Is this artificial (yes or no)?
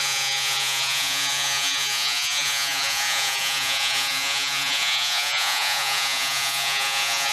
yes